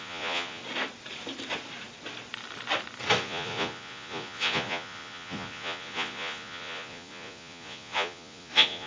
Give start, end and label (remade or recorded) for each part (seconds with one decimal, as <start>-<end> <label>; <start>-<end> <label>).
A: 0.0-0.6 remade; 0.6-3.2 recorded; 3.2-8.9 remade